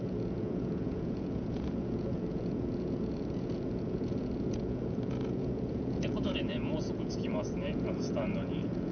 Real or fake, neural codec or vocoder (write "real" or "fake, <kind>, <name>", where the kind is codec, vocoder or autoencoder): fake, vocoder, Vocos